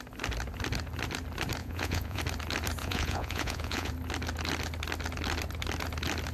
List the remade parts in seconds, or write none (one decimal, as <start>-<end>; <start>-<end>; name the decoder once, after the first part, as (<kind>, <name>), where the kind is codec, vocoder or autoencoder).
1.6-2.2 (vocoder, Vocos); 2.8-3.9